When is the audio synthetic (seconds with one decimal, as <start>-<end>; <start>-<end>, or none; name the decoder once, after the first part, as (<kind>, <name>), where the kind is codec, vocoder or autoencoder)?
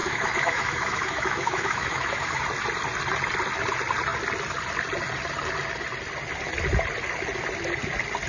0.0-2.4 (autoencoder, DAC-VAE)